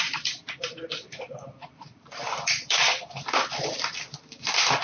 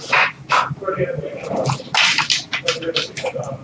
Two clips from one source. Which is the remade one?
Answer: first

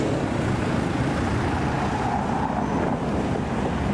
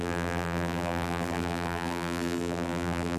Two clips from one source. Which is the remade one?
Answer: second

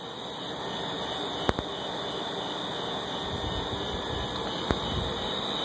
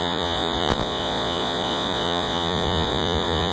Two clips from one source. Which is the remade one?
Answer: second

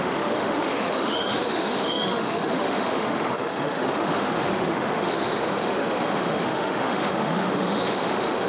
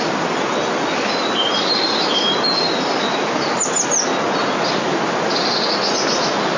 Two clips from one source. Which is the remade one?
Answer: first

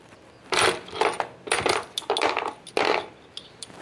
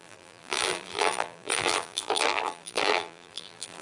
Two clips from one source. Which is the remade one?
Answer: second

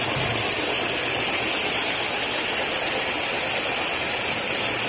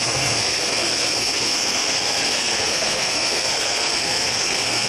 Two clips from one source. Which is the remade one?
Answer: second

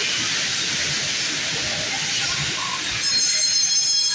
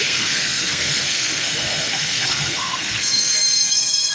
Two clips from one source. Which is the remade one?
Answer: second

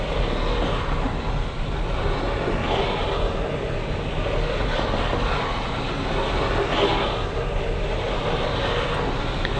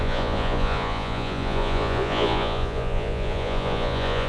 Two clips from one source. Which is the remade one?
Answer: second